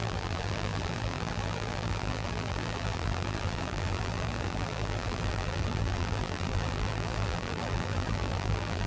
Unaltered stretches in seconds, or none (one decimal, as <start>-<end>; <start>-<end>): none